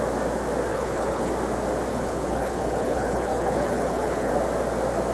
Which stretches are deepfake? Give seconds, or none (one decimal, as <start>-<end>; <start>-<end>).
0.7-1.3; 1.9-4.3